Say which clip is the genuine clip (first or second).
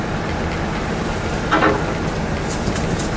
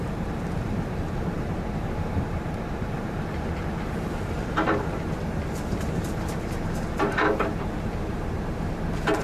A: first